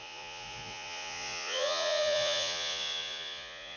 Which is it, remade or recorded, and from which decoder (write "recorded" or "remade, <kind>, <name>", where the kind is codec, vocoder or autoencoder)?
remade, vocoder, Vocos